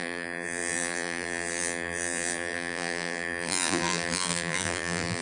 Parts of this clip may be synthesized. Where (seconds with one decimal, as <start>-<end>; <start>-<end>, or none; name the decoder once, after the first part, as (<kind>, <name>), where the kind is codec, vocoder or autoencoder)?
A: 0.0-5.2 (vocoder, BigVGAN v2)